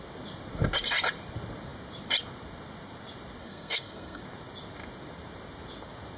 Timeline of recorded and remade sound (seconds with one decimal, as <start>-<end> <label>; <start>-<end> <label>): 0.0-3.4 recorded; 3.4-4.2 remade; 4.2-6.2 recorded